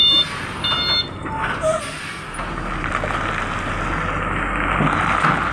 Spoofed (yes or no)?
no